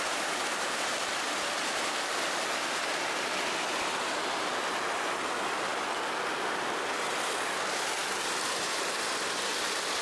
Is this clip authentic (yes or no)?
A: yes